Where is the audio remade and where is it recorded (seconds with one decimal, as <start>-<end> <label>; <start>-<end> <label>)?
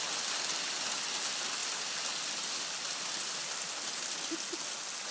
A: 0.0-5.1 recorded